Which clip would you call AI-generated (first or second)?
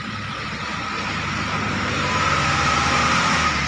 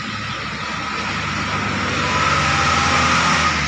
first